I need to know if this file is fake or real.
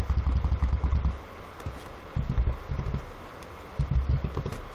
real